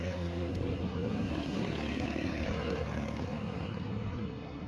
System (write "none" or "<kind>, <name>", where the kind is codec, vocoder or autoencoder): codec, SNAC